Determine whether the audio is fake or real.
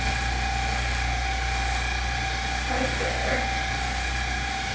real